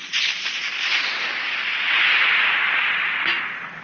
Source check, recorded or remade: recorded